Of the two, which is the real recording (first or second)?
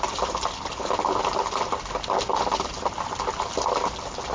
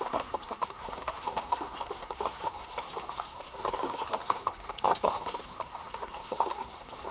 first